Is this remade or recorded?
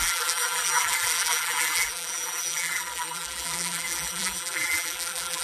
remade